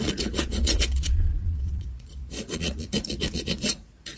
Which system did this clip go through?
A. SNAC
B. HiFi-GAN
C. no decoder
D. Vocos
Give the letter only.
D